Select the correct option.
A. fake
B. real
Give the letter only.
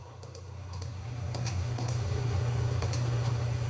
A